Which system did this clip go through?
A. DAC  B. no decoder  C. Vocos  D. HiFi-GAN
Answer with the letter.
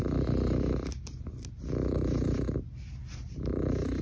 B